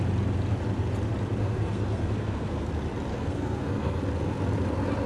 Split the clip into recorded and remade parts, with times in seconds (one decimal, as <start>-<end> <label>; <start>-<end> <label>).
0.0-1.4 recorded; 1.4-2.7 remade; 2.7-3.1 recorded; 3.1-4.0 remade; 4.0-5.1 recorded